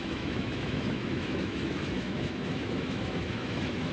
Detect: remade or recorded remade